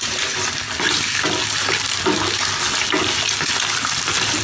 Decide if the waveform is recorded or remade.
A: recorded